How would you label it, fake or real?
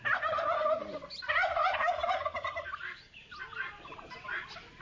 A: real